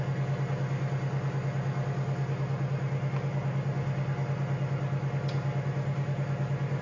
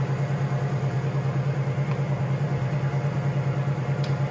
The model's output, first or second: second